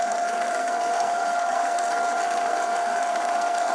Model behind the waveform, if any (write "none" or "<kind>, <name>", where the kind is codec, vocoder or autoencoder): codec, SNAC